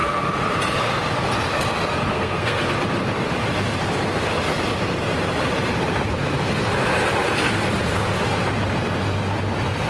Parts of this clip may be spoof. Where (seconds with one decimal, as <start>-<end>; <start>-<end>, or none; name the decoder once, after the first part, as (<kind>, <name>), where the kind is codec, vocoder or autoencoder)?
2.1-2.6 (codec, SNAC)